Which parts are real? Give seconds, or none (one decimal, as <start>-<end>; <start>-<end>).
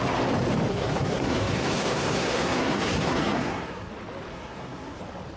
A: 0.0-0.7; 3.9-4.3; 5.0-5.4